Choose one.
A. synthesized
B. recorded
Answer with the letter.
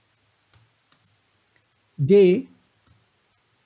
B